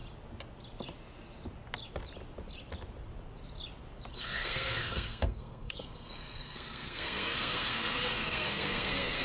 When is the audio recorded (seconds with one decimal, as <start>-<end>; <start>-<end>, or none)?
0.0-4.1